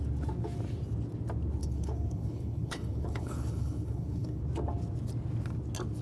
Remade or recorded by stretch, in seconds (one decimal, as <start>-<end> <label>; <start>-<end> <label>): 0.0-1.6 recorded; 1.6-4.4 remade; 4.4-6.0 recorded

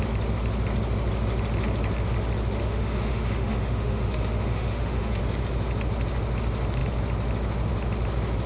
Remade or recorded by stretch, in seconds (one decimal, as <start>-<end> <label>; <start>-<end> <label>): 0.0-2.6 recorded; 2.6-5.2 remade; 5.2-8.5 recorded

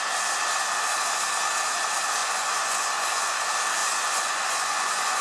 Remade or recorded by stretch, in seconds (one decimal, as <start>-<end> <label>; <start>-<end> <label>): 0.0-2.2 recorded; 2.2-3.4 remade; 3.4-3.8 recorded; 3.8-5.2 remade

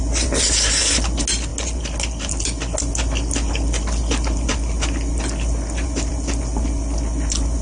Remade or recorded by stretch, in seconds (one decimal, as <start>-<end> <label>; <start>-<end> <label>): 0.0-7.6 recorded